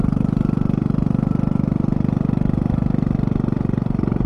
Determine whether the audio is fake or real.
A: real